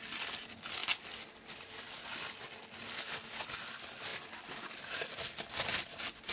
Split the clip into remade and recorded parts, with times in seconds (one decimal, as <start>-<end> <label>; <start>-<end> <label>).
0.0-6.3 recorded